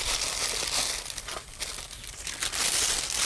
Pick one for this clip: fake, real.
real